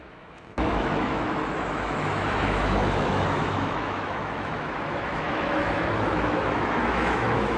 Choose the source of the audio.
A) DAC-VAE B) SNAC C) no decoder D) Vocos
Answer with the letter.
A